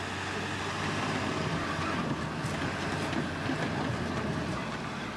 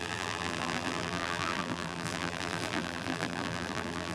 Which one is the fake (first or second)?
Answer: second